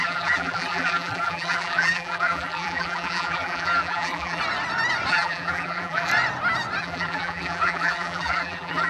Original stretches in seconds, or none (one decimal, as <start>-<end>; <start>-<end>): 4.4-5.1; 6.1-6.8